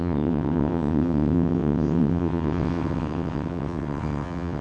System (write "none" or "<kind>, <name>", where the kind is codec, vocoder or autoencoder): vocoder, WaveNeXt